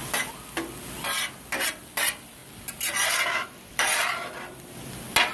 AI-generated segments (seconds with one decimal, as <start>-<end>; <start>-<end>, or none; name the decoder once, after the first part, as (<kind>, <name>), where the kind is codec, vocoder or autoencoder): none